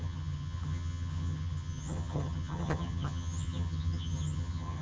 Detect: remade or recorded remade